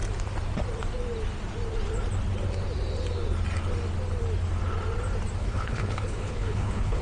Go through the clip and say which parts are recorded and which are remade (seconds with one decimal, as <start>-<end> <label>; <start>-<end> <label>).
0.0-5.4 recorded; 5.4-7.0 remade